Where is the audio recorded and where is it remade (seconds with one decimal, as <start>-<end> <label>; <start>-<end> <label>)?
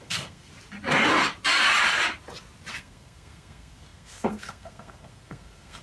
0.0-0.5 remade; 0.5-2.7 recorded; 2.7-5.8 remade